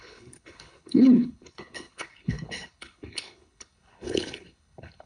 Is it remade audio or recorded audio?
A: remade